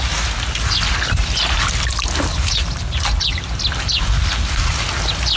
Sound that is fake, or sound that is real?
real